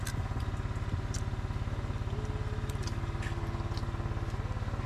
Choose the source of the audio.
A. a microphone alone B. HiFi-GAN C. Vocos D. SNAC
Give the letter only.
A